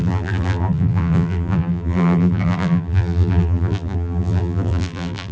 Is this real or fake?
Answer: fake